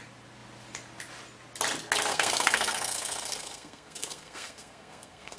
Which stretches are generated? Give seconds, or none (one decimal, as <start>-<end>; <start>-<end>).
2.1-5.4